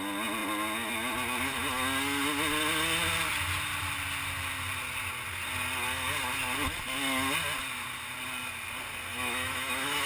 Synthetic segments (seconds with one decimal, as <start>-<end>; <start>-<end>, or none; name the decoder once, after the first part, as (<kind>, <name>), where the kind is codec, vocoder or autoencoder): 9.1-10.1 (autoencoder, DAC-VAE)